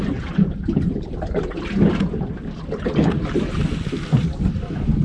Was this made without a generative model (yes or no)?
yes